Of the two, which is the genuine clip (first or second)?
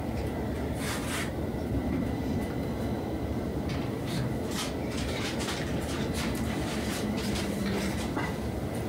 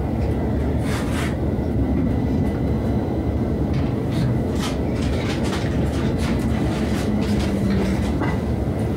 second